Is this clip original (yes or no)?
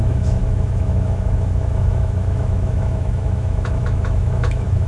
no